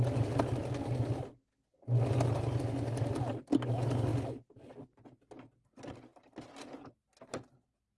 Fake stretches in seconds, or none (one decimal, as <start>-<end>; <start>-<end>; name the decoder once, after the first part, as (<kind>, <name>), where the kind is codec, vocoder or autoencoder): none